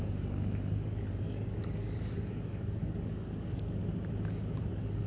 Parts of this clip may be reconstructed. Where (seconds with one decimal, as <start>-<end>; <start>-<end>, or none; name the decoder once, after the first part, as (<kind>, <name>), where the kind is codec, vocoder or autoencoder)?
0.0-3.8 (codec, DAC); 4.6-5.1